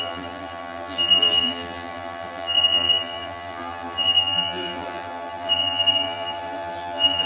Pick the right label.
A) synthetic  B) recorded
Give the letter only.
A